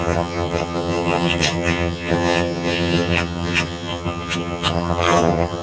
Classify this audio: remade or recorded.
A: remade